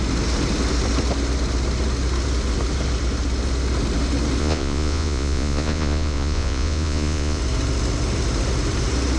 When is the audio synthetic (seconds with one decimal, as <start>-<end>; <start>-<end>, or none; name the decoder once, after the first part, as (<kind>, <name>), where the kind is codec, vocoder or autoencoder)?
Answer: 4.4-7.4 (vocoder, Vocos)